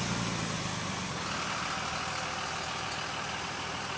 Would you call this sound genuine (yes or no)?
yes